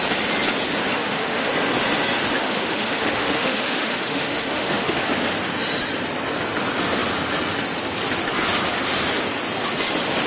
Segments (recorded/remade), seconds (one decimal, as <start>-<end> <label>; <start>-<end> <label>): 0.0-1.0 recorded; 1.0-1.5 remade; 1.5-2.3 recorded; 2.3-5.0 remade; 5.0-10.3 recorded